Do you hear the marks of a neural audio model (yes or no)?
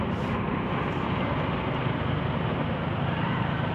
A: no